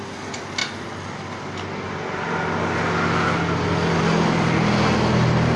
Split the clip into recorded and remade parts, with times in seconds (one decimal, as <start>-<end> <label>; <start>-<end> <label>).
0.0-5.6 recorded